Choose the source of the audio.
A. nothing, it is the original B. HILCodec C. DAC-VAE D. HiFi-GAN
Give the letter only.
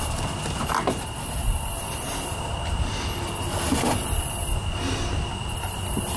A